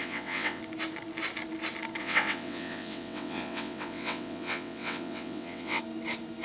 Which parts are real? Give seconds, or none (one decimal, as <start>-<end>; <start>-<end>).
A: 0.6-2.0; 5.8-6.4